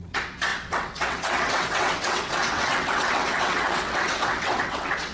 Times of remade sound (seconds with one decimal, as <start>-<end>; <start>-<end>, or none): 0.0-5.1